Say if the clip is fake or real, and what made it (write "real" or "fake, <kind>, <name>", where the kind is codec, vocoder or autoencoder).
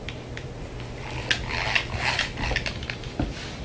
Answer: real